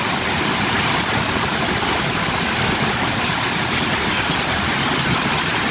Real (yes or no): yes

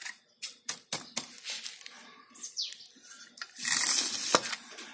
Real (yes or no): yes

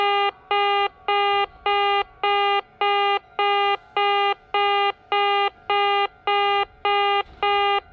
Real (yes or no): yes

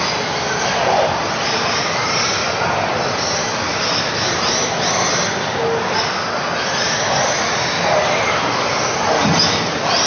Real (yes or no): yes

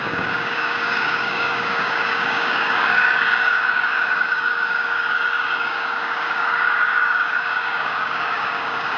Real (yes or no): no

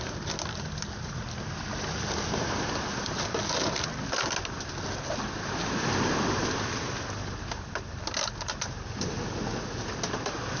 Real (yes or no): yes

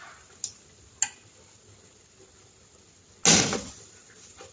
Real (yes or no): yes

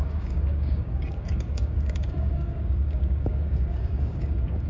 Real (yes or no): no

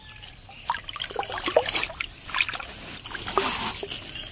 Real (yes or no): yes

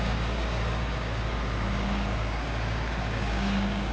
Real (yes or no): no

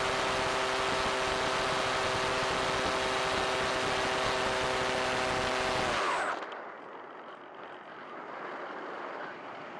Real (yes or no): yes